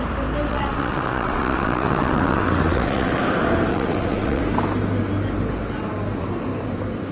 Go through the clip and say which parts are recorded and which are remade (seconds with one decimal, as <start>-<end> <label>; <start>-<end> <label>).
0.0-0.5 recorded; 0.5-3.2 remade; 3.2-3.7 recorded; 3.7-4.4 remade; 4.4-7.1 recorded